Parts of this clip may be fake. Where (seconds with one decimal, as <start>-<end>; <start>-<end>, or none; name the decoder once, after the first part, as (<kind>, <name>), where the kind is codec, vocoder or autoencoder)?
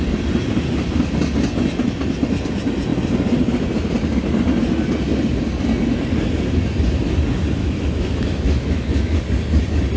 7.6-9.2 (autoencoder, DAC-VAE)